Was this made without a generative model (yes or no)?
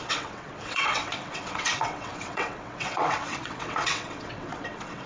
no